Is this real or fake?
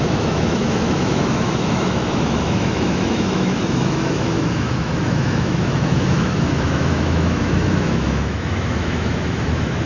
fake